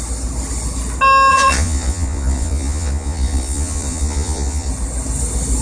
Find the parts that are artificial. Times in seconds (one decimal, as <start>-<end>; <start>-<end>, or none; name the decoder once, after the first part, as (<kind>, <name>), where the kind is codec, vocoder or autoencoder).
1.3-4.7 (vocoder, Vocos)